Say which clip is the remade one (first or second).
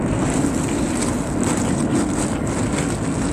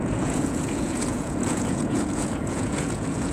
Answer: second